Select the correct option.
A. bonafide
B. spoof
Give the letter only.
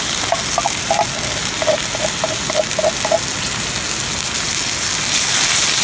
A